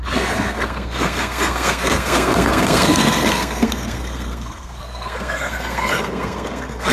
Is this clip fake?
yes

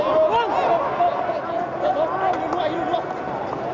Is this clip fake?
no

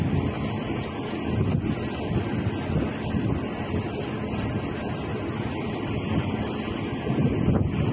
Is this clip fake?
no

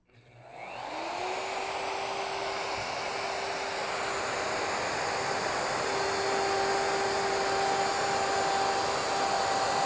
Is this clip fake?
no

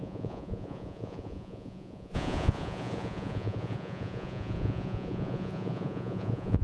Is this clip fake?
yes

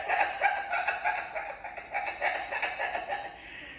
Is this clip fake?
no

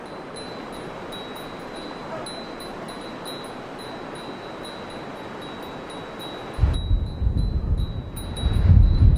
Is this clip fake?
no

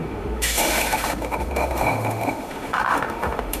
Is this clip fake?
yes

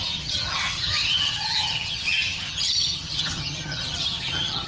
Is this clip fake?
yes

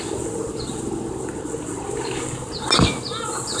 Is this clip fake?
no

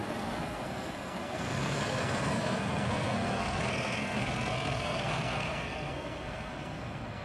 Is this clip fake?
yes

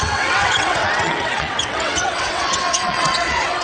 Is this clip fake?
yes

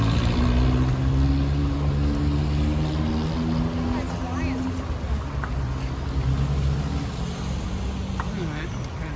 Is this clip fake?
no